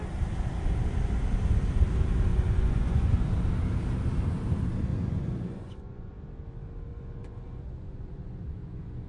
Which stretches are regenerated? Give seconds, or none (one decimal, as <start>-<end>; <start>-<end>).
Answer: 2.3-3.1; 4.9-6.1; 6.9-9.1